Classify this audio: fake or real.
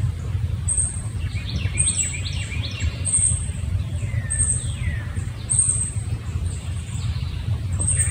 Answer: fake